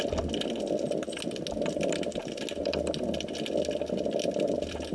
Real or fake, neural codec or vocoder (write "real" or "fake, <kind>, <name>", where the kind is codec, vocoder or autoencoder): real